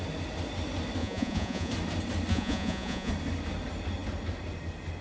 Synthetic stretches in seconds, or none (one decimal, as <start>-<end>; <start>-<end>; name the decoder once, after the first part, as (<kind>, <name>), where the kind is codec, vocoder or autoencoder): 1.0-1.7 (vocoder, Vocos); 2.3-3.1

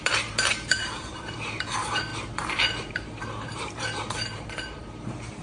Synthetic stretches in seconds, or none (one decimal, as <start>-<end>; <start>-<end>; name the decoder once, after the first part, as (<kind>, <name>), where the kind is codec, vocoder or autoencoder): 0.0-5.4 (vocoder, BigVGAN v2)

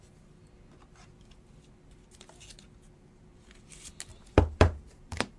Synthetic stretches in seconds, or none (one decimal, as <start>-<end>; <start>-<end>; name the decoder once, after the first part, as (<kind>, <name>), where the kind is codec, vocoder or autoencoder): 4.1-5.4 (vocoder, BigVGAN v2)

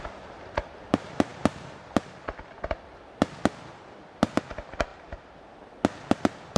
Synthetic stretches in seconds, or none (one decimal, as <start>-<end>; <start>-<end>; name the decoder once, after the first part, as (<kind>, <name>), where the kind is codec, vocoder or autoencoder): 4.9-5.6 (vocoder, BigVGAN v2)

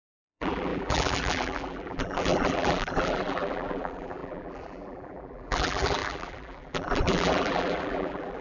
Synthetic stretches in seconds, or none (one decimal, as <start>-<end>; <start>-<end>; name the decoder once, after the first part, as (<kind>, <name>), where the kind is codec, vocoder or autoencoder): 0.0-8.4 (vocoder, BigVGAN v2)

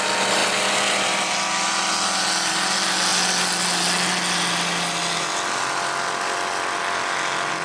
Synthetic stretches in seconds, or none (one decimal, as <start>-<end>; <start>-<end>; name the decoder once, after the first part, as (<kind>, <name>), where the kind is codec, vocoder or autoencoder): none